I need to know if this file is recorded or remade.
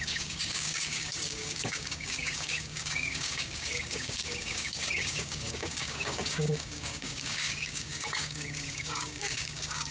remade